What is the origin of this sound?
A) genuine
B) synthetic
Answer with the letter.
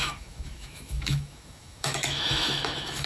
B